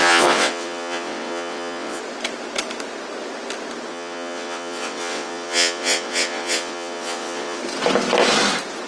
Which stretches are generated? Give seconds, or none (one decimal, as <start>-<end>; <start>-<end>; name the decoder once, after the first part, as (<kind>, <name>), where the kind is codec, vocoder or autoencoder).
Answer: 0.0-2.0 (vocoder, WaveNeXt); 3.9-7.6